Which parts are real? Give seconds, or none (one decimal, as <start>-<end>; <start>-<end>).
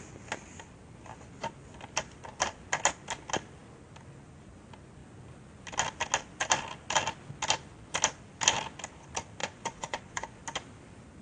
0.0-9.4; 10.4-11.2